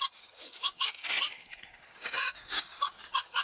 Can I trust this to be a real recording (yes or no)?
no